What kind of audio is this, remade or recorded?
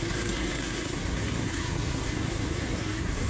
remade